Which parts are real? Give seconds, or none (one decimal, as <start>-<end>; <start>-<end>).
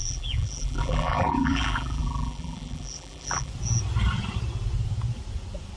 3.5-5.8